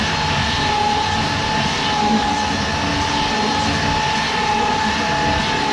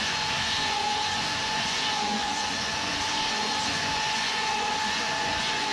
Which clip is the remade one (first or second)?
second